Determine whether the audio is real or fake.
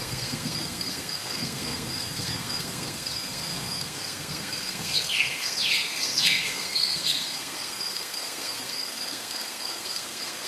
fake